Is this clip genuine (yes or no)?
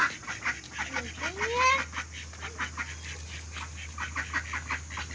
yes